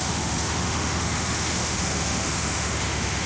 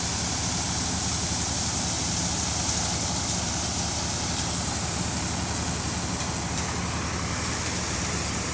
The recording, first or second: second